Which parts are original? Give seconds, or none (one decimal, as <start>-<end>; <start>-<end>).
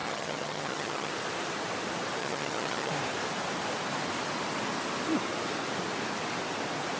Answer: 1.1-2.2; 2.9-7.0